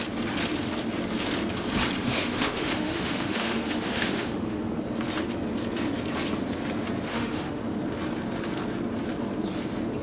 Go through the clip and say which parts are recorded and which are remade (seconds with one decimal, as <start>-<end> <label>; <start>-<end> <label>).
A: 0.0-2.0 recorded; 2.0-4.8 remade; 4.8-7.1 recorded; 7.1-7.6 remade; 7.6-10.0 recorded